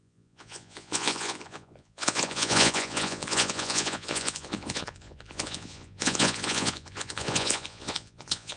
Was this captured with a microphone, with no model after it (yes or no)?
no